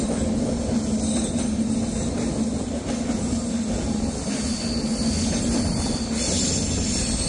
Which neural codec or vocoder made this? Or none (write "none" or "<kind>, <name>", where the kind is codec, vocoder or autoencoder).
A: none